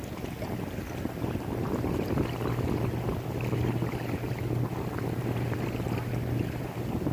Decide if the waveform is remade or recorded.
recorded